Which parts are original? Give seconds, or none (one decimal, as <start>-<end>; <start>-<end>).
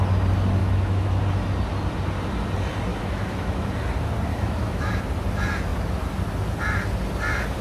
0.0-0.6; 1.2-2.9; 3.7-4.3; 5.0-7.6